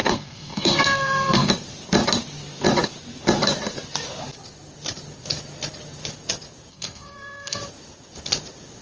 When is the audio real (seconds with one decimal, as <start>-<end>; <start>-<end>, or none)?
1.5-6.7; 7.6-8.8